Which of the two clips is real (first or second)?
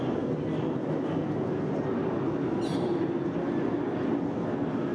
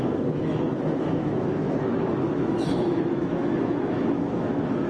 first